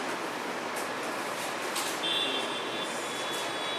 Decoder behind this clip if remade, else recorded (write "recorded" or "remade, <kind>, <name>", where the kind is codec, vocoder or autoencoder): recorded